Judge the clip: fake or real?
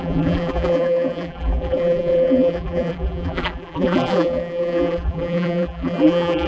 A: fake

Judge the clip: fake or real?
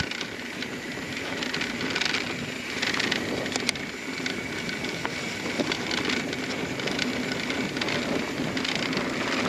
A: real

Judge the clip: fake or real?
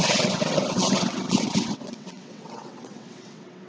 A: fake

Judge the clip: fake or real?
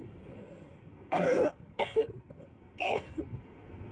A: fake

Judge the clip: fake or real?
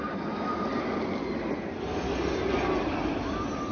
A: real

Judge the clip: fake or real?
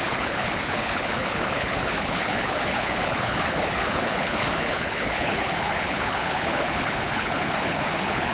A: fake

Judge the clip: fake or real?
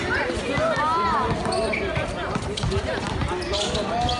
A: real